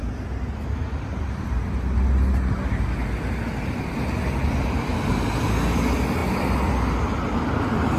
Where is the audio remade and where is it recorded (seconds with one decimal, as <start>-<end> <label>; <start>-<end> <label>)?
0.0-8.0 recorded